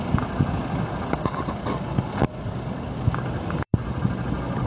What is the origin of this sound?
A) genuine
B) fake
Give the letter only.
A